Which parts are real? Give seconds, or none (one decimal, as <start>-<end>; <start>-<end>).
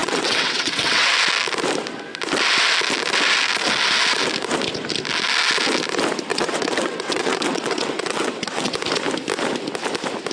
1.1-6.3; 8.7-10.3